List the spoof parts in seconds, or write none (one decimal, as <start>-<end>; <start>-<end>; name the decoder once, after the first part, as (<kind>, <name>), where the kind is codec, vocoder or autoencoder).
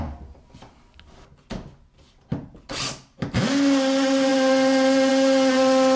none